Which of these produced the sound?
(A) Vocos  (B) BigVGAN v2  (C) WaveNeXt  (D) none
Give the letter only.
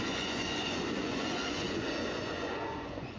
A